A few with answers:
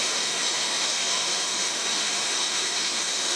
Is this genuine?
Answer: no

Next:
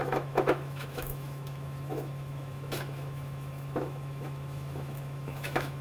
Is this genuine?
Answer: no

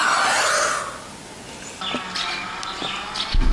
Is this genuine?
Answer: yes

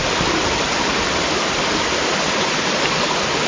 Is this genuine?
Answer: yes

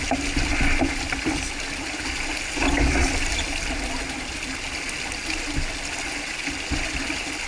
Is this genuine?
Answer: yes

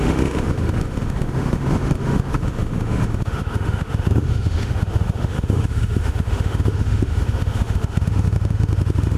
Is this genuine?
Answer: no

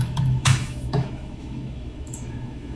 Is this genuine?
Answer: no